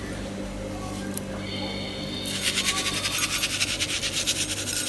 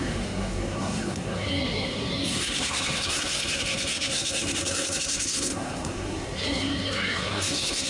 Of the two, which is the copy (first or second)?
second